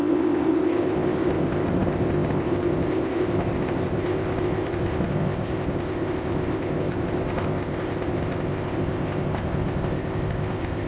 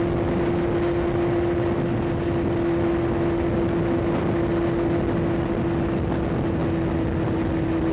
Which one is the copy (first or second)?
first